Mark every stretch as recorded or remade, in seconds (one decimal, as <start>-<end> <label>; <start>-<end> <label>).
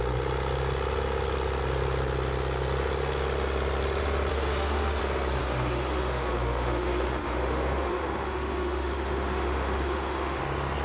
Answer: 0.0-4.3 recorded; 4.3-5.0 remade; 5.0-5.4 recorded; 5.4-10.4 remade; 10.4-10.8 recorded